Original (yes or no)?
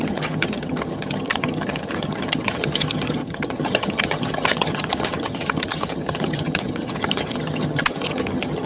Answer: no